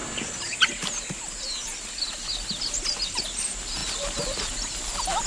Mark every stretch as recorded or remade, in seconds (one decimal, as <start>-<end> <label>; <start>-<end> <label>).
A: 0.0-5.3 recorded